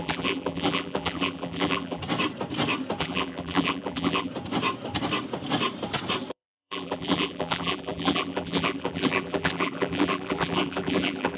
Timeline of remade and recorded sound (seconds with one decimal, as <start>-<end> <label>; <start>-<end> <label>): 0.0-2.0 remade; 2.0-3.0 recorded; 3.0-4.3 remade; 4.3-6.3 recorded; 6.3-11.4 remade